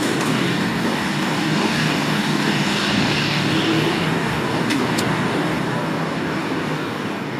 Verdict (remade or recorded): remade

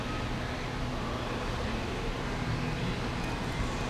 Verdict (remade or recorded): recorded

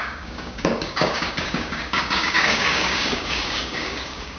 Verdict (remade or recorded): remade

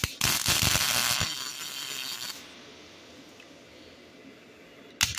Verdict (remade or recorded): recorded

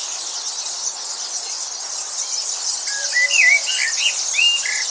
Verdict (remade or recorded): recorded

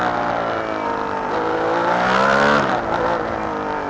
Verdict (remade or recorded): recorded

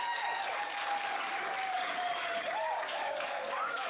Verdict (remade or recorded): remade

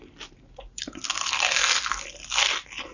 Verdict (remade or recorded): recorded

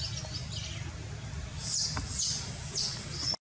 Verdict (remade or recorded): recorded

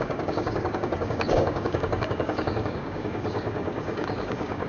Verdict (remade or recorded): remade